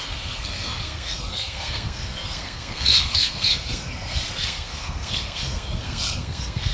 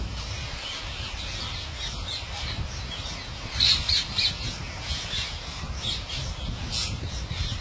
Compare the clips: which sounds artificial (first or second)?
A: first